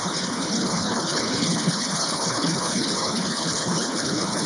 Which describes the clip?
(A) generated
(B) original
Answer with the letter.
A